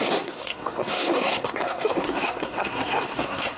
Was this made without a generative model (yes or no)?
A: no